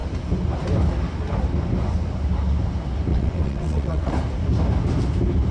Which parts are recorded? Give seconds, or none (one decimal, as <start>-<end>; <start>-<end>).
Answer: 0.0-3.1; 4.1-5.5